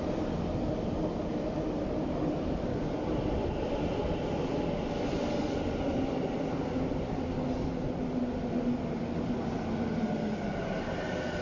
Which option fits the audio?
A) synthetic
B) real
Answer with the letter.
B